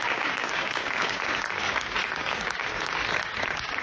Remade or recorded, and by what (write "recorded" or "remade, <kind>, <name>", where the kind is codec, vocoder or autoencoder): remade, codec, DAC